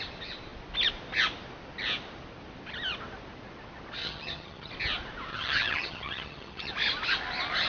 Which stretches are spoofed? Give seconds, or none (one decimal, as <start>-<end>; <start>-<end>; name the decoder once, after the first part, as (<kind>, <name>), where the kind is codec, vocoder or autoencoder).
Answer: 4.0-4.7 (vocoder, HiFi-GAN); 5.3-6.7